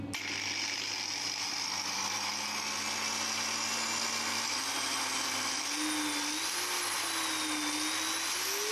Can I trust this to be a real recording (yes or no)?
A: yes